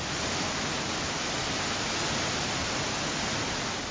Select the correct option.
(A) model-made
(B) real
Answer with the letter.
B